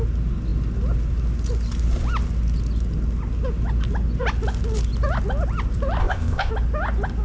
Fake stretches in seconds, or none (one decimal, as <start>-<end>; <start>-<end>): 6.0-6.5